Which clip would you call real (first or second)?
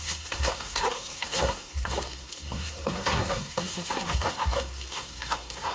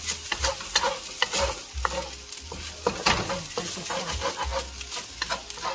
second